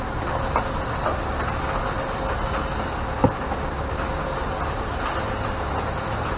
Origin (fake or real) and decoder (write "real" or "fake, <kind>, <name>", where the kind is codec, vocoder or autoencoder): real